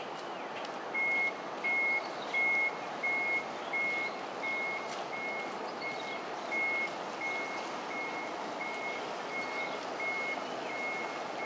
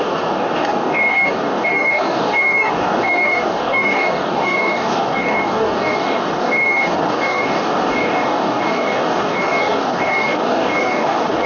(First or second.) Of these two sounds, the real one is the first